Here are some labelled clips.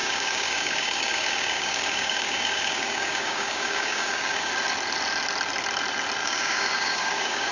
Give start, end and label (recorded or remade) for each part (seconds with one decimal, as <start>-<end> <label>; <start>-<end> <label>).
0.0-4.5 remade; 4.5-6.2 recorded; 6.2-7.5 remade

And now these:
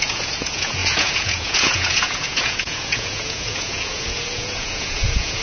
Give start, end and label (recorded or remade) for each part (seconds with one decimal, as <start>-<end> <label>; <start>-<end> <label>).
0.0-5.4 remade

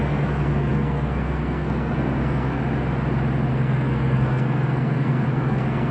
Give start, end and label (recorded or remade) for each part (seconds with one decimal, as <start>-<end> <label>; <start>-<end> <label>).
0.0-2.6 remade; 2.6-3.5 recorded; 3.5-5.9 remade

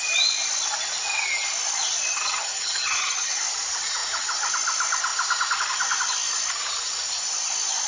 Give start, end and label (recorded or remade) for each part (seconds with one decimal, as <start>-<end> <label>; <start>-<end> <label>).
0.0-2.1 recorded; 2.1-3.4 remade; 3.4-7.9 recorded